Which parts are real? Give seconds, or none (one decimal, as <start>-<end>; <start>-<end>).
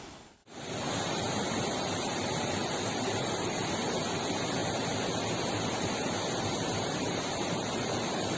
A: none